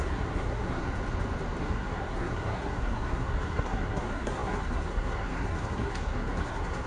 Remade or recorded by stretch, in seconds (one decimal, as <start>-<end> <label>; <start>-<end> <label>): 0.0-0.8 remade; 0.8-1.6 recorded; 1.6-6.9 remade